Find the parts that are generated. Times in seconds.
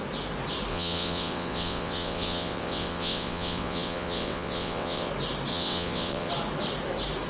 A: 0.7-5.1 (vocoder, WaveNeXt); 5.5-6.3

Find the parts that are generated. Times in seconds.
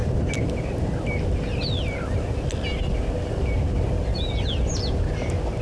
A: none